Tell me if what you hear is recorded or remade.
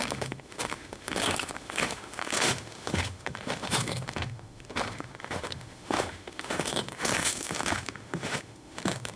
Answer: remade